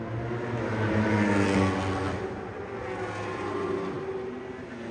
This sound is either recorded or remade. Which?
recorded